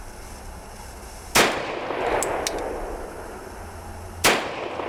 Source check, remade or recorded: recorded